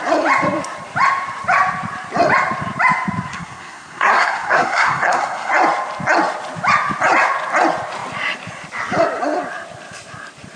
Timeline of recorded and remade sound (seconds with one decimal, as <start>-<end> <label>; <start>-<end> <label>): 0.0-3.3 recorded; 3.3-5.5 remade; 5.5-10.6 recorded